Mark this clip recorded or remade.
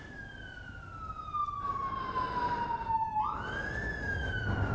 recorded